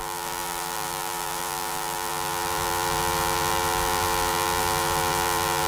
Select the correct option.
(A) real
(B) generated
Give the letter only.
B